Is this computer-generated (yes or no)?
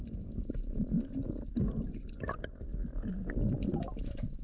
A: no